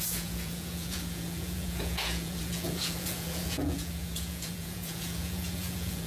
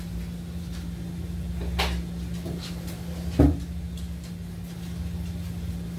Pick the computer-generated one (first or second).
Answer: first